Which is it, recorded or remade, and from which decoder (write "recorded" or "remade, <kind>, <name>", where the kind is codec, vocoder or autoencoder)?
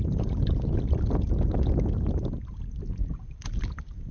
recorded